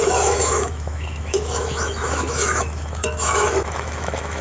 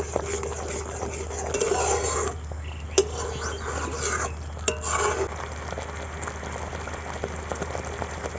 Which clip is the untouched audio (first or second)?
second